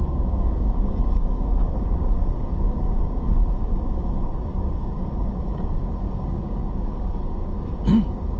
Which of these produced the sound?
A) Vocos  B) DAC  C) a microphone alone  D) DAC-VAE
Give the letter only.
B